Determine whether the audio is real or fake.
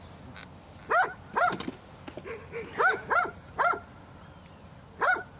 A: real